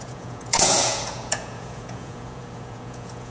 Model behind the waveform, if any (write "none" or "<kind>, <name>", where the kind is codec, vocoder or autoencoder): vocoder, Vocos